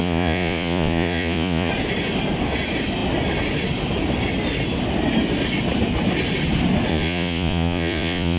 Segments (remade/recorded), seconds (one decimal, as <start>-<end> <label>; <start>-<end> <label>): 0.0-1.7 remade; 1.7-6.9 recorded; 6.9-8.4 remade